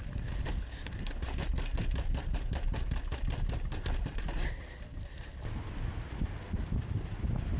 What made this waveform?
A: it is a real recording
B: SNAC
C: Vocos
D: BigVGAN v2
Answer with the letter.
D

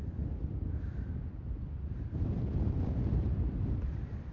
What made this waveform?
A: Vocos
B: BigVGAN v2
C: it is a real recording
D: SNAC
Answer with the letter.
B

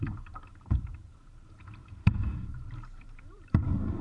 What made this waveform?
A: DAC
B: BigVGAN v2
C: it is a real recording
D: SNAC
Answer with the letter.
B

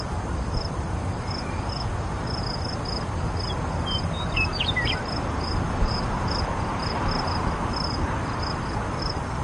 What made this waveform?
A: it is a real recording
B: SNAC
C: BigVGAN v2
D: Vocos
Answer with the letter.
A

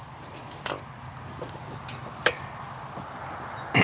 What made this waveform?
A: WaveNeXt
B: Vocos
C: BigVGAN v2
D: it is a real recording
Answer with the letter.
D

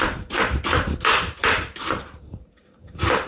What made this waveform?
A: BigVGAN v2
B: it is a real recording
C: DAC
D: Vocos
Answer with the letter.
A